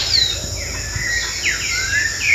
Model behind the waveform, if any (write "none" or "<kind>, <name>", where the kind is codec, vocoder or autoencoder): none